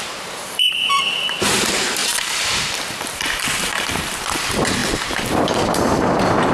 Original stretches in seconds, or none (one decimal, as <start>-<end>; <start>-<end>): none